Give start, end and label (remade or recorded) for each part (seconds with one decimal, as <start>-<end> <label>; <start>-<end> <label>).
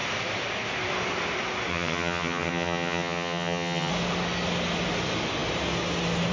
0.0-1.7 recorded; 1.7-3.9 remade; 3.9-6.3 recorded